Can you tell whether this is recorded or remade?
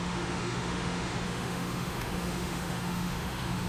remade